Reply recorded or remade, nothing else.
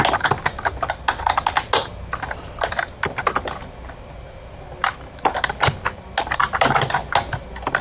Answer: recorded